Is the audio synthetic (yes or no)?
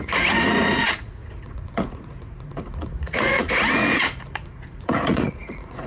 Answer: yes